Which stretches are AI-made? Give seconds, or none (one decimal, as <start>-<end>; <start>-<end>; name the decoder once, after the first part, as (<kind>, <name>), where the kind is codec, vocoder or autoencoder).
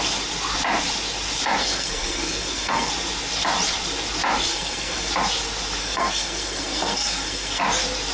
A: 1.6-2.9 (codec, SNAC); 4.5-5.1; 5.8-7.6